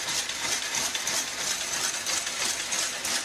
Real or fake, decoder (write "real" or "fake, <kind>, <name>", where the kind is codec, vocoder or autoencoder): real